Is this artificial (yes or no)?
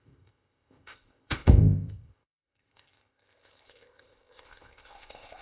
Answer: yes